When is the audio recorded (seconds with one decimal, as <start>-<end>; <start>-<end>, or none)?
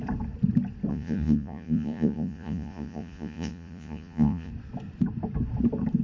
0.0-0.9; 4.5-6.0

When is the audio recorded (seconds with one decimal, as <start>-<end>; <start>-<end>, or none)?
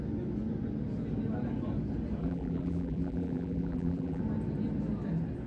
0.0-2.2; 4.2-5.5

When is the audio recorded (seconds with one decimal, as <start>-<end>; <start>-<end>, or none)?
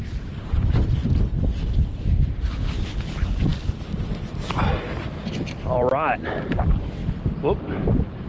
0.9-8.3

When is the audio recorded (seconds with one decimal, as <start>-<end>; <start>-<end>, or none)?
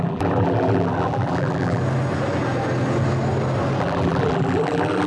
1.8-3.8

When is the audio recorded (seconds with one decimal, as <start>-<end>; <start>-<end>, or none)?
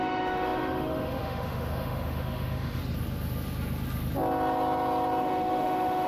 2.8-5.2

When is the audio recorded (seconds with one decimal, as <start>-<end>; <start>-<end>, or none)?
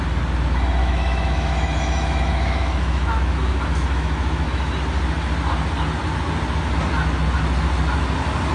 0.0-0.8; 4.7-8.5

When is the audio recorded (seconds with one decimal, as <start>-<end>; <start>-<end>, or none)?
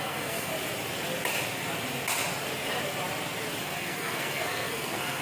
0.5-3.6